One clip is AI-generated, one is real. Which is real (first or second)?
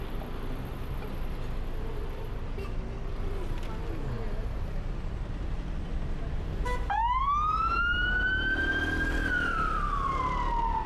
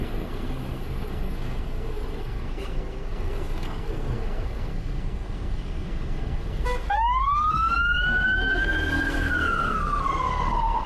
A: first